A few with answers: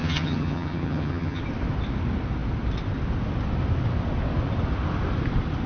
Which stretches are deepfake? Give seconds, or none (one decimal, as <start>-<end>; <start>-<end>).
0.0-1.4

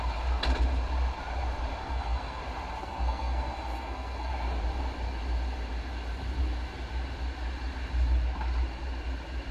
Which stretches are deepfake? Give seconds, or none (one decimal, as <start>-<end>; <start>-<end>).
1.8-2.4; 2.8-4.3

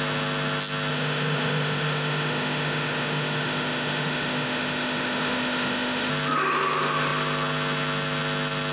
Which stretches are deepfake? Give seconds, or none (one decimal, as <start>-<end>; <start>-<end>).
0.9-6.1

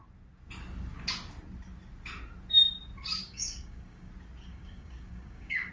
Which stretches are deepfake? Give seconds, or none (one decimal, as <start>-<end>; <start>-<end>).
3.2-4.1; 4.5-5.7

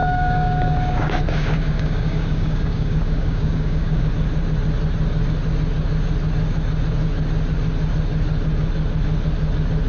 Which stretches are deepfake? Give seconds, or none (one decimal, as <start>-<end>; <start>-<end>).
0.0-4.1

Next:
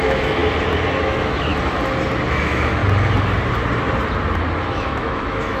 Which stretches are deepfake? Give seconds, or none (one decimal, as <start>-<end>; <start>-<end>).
0.0-0.4; 1.0-1.5; 2.3-2.8; 4.6-5.6